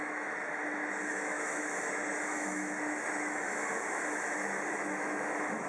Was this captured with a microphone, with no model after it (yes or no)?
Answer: no